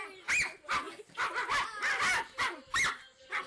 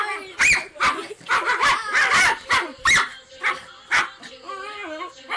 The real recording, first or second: first